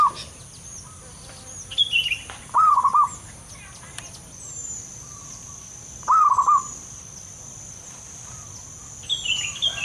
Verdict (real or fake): real